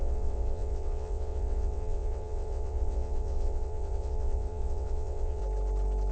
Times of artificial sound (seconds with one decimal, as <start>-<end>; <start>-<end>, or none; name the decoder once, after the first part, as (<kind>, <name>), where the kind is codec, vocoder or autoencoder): 0.0-5.4 (vocoder, WaveNeXt)